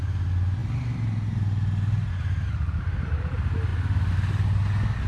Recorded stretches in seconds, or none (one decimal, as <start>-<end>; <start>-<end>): 0.0-5.1